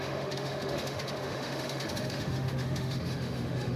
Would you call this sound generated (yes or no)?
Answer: yes